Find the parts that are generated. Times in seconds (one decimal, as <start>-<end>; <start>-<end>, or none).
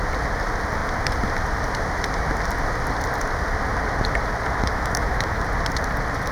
4.7-5.4